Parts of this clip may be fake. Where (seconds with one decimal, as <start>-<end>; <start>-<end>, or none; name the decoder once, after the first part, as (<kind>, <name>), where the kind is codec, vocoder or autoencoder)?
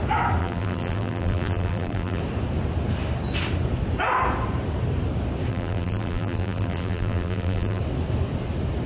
0.4-2.2 (vocoder, BigVGAN v2); 5.5-7.8